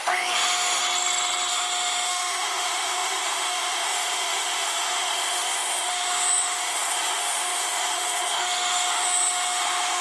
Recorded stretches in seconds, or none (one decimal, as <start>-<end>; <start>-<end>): 0.8-1.5